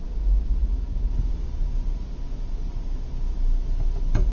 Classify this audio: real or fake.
real